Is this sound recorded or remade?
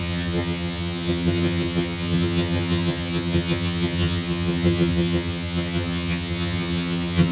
remade